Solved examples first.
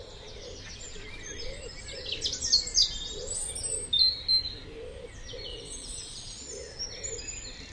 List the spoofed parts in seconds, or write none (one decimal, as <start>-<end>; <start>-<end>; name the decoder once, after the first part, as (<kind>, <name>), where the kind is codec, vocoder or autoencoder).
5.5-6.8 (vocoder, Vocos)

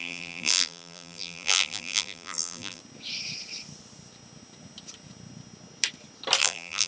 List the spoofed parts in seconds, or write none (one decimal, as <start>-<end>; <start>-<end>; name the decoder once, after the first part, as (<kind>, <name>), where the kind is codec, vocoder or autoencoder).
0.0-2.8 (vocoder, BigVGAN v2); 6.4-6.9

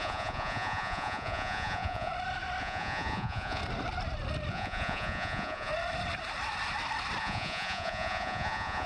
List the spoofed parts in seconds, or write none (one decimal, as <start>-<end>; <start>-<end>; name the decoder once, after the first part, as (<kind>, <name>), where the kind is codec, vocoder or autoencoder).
0.0-2.1 (vocoder, Vocos); 2.6-3.6; 4.5-5.7; 7.2-8.9

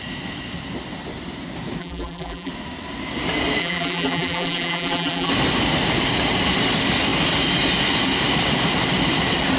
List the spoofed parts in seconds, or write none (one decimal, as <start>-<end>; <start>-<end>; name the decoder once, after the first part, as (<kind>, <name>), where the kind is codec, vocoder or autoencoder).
1.8-2.5 (vocoder, BigVGAN v2); 3.6-5.3

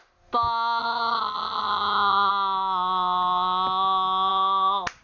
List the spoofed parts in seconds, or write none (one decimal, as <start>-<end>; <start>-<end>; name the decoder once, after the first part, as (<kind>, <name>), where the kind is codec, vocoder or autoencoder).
0.8-2.3 (vocoder, HiFi-GAN)